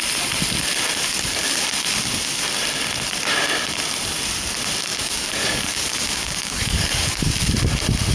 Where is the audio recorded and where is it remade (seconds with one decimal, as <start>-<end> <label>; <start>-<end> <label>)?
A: 0.0-4.9 recorded; 4.9-7.3 remade; 7.3-8.1 recorded